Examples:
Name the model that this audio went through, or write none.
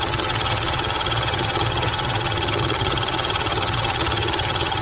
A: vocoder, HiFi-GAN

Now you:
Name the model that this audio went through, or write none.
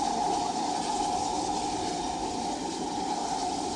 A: none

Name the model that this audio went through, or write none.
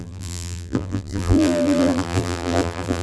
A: vocoder, BigVGAN v2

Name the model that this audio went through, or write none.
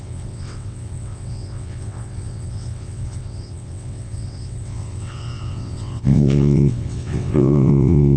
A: vocoder, WaveNeXt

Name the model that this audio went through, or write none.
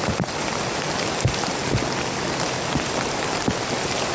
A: none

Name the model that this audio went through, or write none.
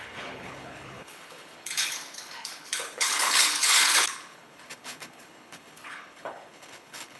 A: codec, HILCodec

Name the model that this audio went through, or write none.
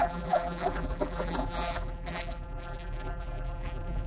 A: vocoder, BigVGAN v2